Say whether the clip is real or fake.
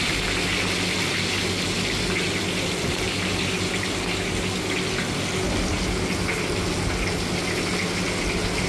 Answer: real